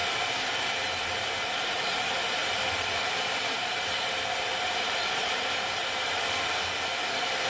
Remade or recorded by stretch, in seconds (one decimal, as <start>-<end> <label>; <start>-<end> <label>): 0.0-2.4 recorded; 2.4-6.2 remade; 6.2-7.5 recorded